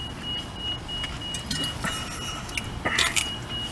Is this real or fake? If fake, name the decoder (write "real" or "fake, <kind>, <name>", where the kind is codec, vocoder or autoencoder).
real